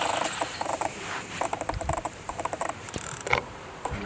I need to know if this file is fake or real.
fake